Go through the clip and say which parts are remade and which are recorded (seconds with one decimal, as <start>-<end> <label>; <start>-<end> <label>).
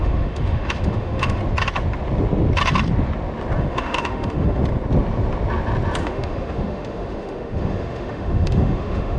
0.0-1.4 remade; 1.4-3.6 recorded; 3.6-4.6 remade; 4.6-6.0 recorded; 6.0-9.2 remade